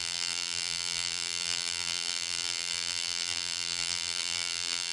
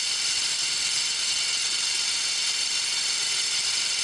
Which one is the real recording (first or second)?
second